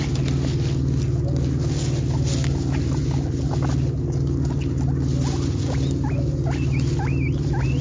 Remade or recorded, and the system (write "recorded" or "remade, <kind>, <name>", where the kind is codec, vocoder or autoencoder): recorded